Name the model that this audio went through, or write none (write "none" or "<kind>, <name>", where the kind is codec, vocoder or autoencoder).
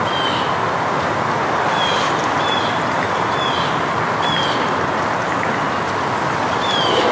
none